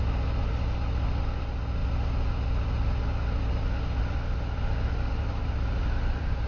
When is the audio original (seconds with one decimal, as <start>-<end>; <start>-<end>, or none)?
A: 0.0-6.5